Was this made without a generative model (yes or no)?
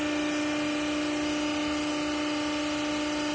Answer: yes